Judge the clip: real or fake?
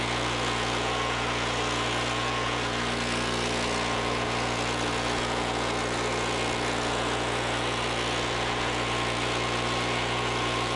fake